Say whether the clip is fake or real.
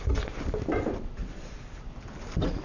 real